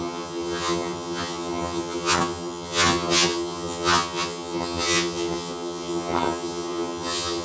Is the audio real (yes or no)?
no